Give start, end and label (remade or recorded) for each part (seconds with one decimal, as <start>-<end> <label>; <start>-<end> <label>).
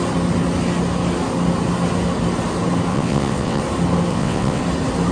0.0-2.9 recorded; 2.9-3.6 remade; 3.6-4.1 recorded; 4.1-4.6 remade; 4.6-5.1 recorded